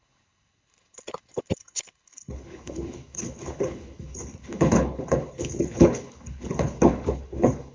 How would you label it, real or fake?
fake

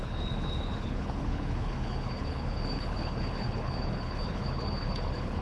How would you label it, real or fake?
fake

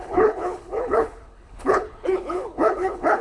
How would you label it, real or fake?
fake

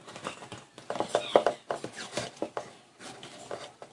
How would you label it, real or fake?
real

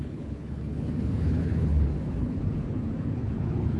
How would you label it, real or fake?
fake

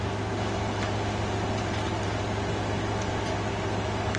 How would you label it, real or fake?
real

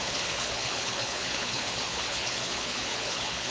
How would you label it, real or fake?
fake